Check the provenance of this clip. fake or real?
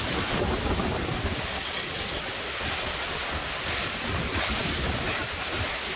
real